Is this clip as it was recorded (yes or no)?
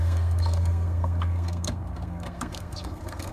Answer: no